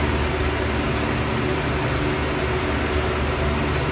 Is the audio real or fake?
real